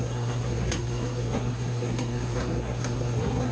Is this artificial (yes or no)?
yes